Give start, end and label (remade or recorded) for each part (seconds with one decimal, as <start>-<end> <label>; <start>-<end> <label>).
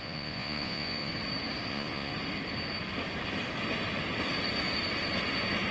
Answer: 0.0-1.1 remade; 1.1-1.7 recorded; 1.7-2.1 remade; 2.1-5.7 recorded